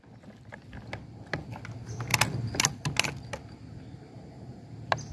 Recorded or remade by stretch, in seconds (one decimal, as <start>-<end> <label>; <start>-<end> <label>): 0.0-5.1 recorded